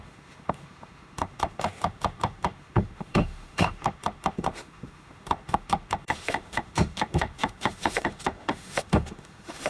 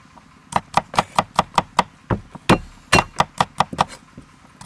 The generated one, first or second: first